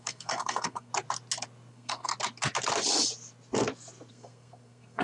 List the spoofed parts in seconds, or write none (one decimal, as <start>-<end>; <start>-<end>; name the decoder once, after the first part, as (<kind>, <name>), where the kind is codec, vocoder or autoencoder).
0.0-0.9 (codec, SNAC); 1.7-2.1; 4.1-5.0